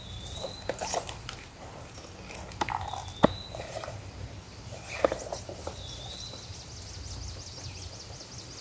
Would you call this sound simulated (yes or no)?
no